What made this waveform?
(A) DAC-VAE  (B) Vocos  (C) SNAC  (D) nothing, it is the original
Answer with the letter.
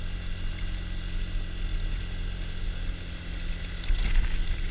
D